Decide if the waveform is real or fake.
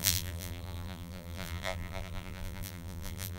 fake